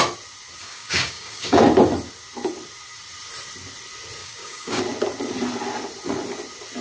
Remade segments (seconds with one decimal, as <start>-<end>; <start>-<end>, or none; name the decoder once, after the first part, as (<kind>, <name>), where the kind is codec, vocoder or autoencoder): 0.6-1.6 (codec, DAC); 4.2-4.8

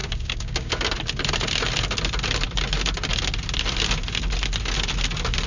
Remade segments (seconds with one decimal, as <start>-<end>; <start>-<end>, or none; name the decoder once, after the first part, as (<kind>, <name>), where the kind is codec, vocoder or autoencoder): 0.0-0.7 (codec, DAC)

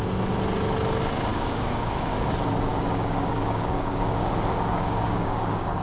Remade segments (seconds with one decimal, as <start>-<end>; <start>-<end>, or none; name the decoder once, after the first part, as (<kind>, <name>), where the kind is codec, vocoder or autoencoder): 1.3-2.3 (codec, DAC); 2.7-5.8